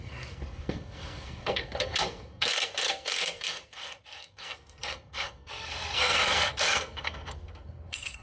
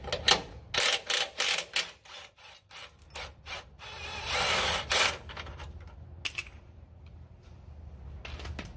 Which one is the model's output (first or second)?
first